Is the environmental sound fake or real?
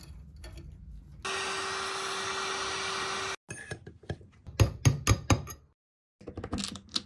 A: real